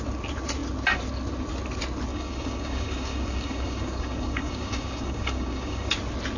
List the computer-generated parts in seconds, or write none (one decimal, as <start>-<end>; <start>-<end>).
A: 2.1-5.9